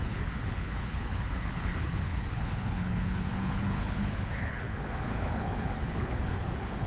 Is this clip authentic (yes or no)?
no